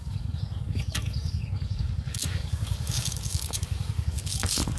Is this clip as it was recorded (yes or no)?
no